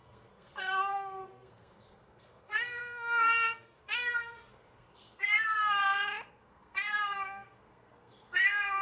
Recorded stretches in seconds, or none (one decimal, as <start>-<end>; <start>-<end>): 5.8-6.3